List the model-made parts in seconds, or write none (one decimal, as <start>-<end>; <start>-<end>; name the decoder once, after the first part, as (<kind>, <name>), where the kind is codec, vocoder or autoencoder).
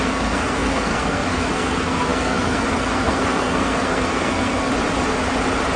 0.0-4.7 (codec, SNAC)